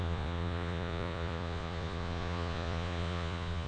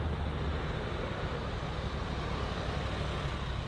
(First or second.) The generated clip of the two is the first